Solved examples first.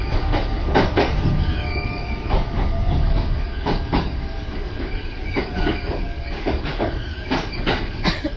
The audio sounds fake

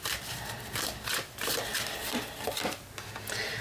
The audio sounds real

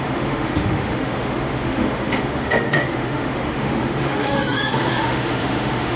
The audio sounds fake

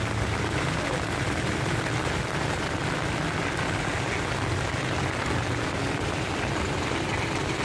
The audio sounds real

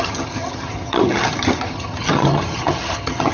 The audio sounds fake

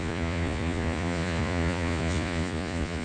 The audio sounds fake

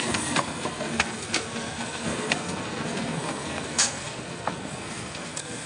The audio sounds fake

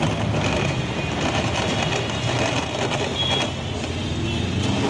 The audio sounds real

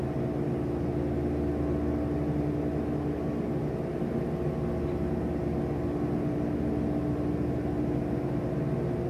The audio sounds real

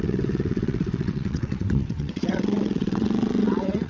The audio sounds fake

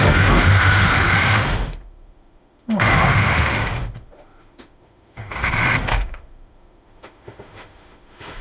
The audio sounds fake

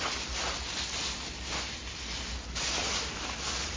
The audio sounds real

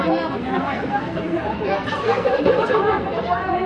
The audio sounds fake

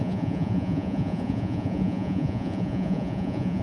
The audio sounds fake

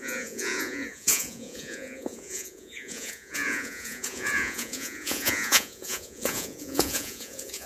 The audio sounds fake